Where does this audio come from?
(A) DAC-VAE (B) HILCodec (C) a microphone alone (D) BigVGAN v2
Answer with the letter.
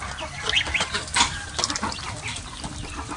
C